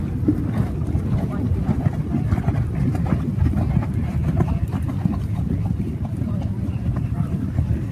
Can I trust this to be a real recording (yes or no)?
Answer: yes